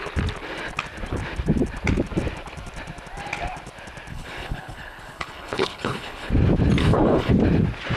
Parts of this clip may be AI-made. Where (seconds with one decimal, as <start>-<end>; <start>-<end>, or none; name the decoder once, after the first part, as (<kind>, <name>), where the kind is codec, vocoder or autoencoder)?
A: 4.1-6.3 (codec, HILCodec); 6.8-7.3